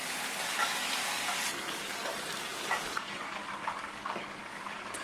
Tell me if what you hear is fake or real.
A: fake